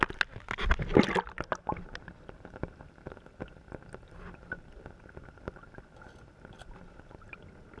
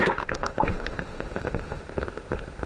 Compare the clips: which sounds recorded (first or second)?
first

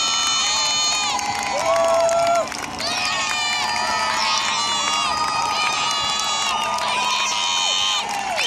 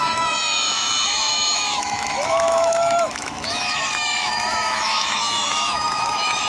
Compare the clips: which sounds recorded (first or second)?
first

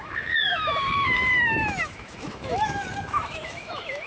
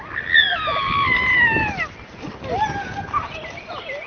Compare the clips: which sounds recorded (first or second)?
second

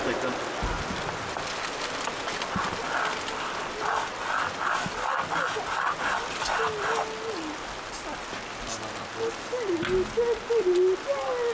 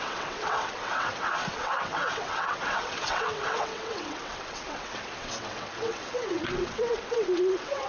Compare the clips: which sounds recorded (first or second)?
first